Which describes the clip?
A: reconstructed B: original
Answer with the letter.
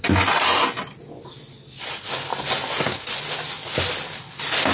B